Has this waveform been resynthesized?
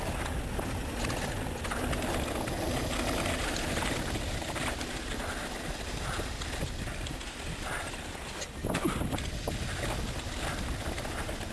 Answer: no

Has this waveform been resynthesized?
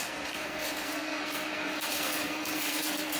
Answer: yes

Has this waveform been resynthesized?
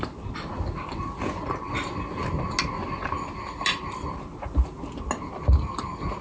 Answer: no